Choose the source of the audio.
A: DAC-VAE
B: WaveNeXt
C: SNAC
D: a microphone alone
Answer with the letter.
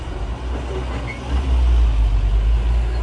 D